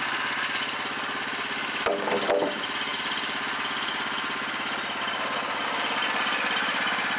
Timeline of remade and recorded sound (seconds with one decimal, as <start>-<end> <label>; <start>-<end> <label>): 0.0-7.2 recorded